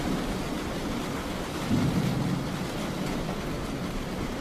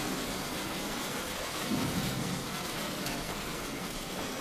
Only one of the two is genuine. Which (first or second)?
first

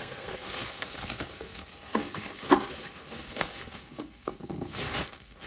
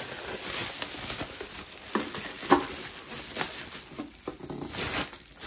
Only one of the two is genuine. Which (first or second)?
second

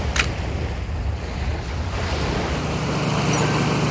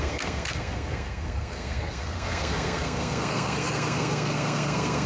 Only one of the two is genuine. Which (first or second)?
first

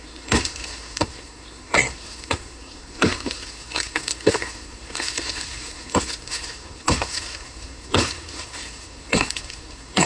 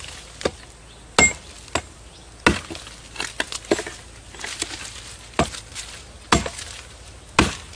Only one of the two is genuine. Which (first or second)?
second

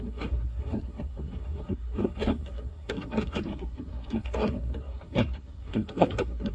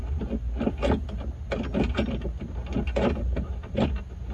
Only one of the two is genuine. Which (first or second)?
second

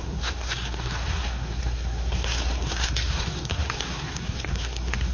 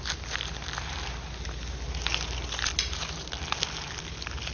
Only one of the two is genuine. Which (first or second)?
second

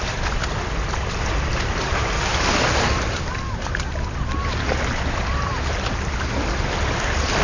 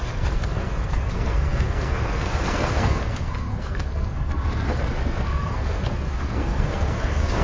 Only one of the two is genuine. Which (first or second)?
first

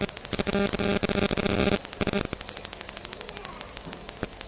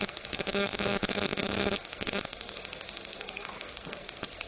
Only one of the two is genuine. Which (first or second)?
first